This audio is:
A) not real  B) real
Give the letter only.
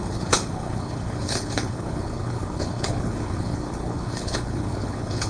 A